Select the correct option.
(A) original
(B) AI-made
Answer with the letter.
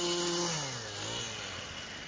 A